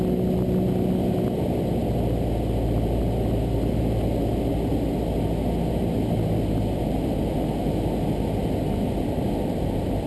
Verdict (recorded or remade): recorded